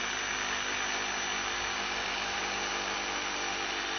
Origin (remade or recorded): recorded